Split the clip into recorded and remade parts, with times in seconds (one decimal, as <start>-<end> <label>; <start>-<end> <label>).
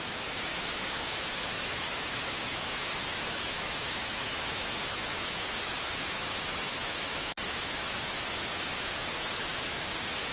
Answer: 0.0-10.3 remade